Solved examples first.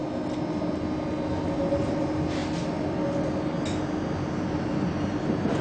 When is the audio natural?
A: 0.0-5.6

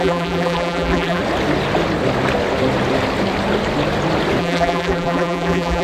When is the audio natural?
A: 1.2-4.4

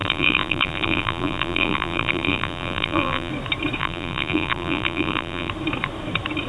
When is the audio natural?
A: 3.3-3.8; 5.5-6.5

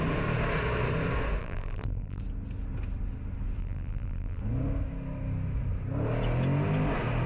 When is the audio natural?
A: 0.0-1.4; 2.2-3.6; 4.4-7.3

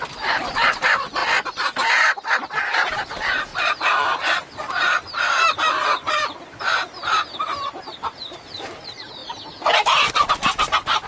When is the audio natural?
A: 1.2-2.5; 9.2-10.3

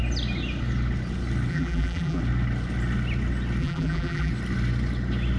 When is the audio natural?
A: 0.0-1.5; 2.2-3.6; 4.3-5.4

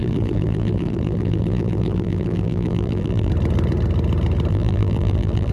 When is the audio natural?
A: 3.3-4.5

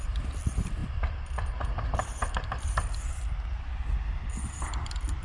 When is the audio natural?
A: none